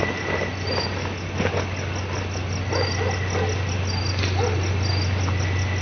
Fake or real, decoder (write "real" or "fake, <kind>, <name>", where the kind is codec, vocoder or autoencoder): real